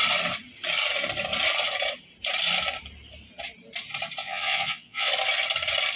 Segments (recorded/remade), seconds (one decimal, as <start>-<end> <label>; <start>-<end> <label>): 0.0-4.2 recorded; 4.2-5.1 remade; 5.1-6.0 recorded